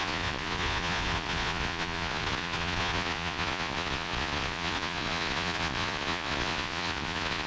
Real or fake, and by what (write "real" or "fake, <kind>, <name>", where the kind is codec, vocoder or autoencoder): fake, vocoder, Vocos